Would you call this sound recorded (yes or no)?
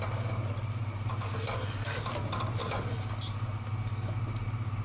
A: yes